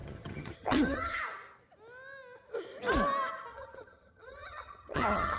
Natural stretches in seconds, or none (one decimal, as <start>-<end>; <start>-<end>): 1.2-3.5